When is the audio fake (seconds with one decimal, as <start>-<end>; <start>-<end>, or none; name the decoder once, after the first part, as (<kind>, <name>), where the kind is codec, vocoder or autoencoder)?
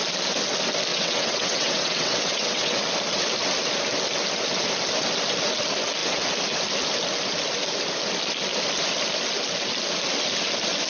0.9-2.8 (vocoder, WaveNeXt)